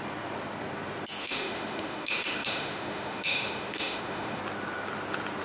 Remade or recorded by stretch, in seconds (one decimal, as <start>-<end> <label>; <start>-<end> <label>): 0.0-1.2 recorded; 1.2-4.4 remade; 4.4-5.4 recorded